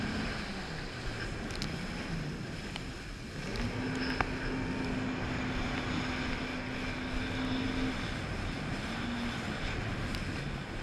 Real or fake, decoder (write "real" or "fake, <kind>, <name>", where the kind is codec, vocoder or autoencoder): real